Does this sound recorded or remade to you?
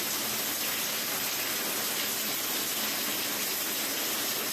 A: recorded